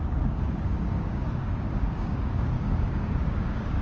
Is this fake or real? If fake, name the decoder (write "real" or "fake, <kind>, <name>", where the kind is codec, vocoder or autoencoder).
fake, codec, DAC